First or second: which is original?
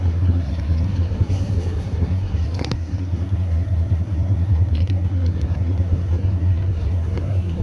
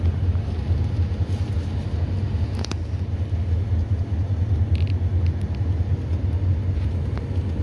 second